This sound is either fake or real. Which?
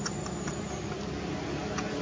real